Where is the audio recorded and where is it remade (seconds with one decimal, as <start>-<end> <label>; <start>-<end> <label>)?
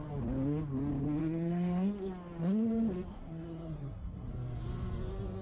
0.0-1.2 recorded; 1.2-2.1 remade; 2.1-3.1 recorded; 3.1-4.3 remade; 4.3-5.4 recorded